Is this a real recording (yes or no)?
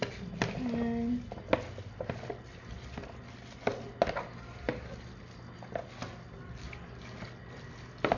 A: yes